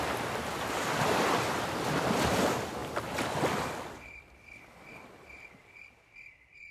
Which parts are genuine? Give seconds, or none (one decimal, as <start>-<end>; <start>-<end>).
0.0-6.7